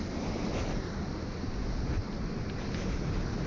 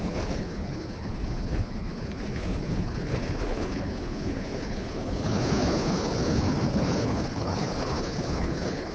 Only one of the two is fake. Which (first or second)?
second